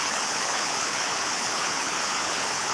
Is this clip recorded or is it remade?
remade